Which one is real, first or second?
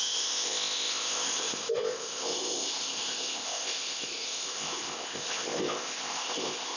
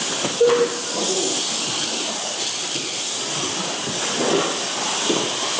second